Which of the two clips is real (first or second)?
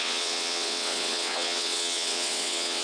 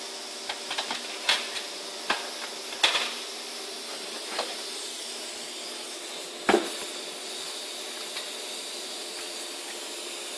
second